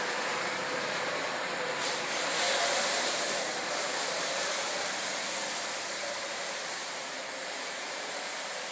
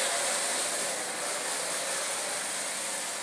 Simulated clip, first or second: first